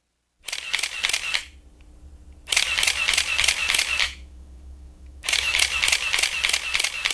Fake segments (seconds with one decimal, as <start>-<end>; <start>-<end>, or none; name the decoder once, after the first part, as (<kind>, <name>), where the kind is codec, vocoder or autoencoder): 4.0-5.6 (autoencoder, DAC-VAE)